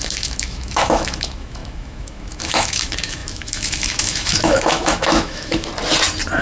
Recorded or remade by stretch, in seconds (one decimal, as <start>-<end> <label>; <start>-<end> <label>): 0.0-5.7 remade; 5.7-6.4 recorded